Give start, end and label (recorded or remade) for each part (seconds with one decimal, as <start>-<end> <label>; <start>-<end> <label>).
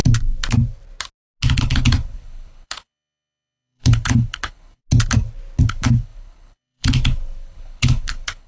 0.0-1.6 recorded; 1.6-4.8 remade; 4.8-5.6 recorded; 5.6-8.5 remade